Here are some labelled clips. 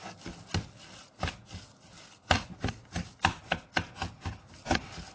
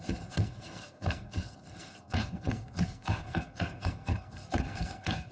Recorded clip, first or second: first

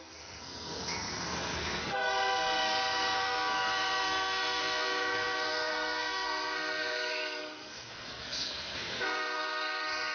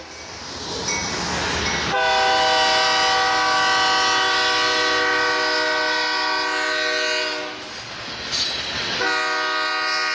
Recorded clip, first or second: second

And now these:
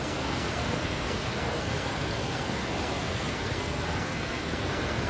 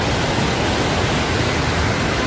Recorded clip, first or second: second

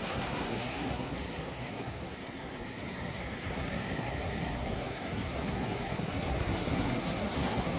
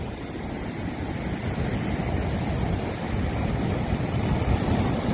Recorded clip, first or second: second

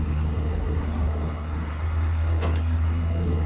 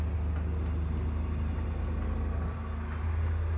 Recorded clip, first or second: second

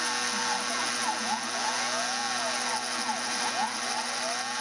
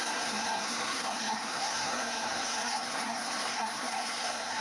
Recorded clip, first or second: first